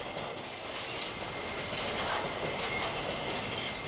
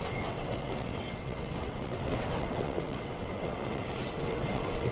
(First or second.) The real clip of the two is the first